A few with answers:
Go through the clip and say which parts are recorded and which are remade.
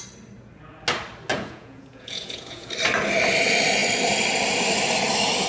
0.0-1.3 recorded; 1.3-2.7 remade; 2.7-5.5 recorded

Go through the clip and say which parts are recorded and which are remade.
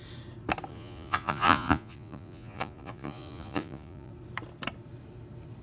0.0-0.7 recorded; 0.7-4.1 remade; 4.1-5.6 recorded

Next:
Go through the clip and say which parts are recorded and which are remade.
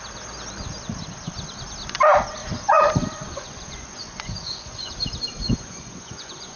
0.0-2.4 recorded; 2.4-4.9 remade; 4.9-5.4 recorded; 5.4-6.6 remade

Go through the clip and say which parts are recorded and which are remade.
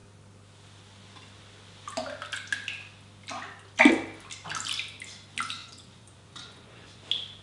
0.0-5.6 recorded; 5.6-7.0 remade; 7.0-7.4 recorded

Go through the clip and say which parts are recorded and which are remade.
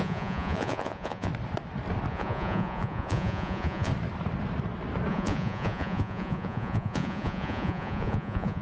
0.0-1.3 remade; 1.3-2.1 recorded; 2.1-3.9 remade; 3.9-5.1 recorded; 5.1-8.6 remade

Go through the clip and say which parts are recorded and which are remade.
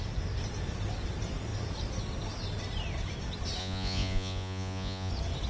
0.0-3.6 recorded; 3.6-5.1 remade; 5.1-5.5 recorded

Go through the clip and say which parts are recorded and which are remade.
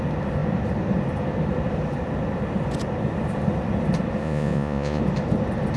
0.0-4.2 recorded; 4.2-5.0 remade; 5.0-5.8 recorded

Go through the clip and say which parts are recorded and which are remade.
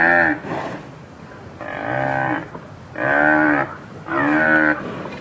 0.0-5.2 recorded